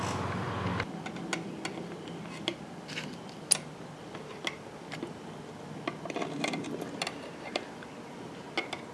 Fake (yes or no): no